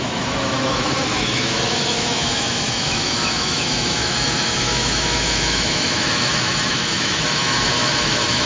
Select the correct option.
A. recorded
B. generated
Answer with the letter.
B